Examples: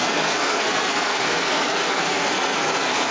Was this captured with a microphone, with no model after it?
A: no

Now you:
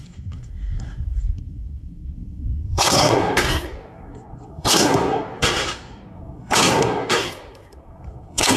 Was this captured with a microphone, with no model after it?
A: no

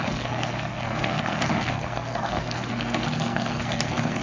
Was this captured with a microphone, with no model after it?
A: no